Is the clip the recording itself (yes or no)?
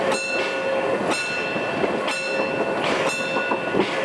yes